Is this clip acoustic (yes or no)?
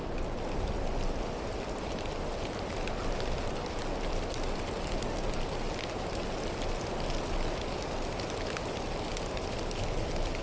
yes